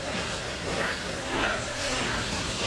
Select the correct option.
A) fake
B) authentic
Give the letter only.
A